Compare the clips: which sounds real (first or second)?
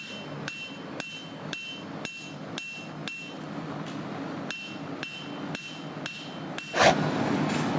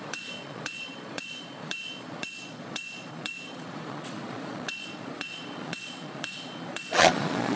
first